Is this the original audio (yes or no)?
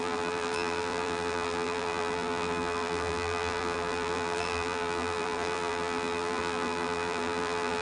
no